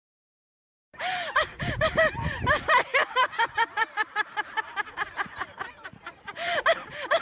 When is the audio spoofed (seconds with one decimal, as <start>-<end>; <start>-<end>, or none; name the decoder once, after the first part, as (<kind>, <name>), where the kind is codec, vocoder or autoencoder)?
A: 0.0-7.2 (vocoder, BigVGAN v2)